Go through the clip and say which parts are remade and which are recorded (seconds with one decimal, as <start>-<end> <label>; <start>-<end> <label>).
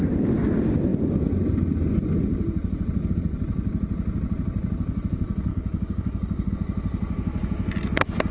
0.0-5.5 recorded; 5.5-6.5 remade; 6.5-8.3 recorded